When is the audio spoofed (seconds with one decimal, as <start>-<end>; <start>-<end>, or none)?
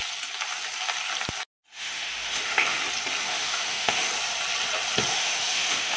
1.7-2.8; 3.2-4.1; 5.1-6.0